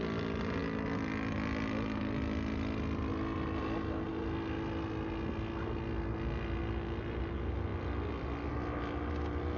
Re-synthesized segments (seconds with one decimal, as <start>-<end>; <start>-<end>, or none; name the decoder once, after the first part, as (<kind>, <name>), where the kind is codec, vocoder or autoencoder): none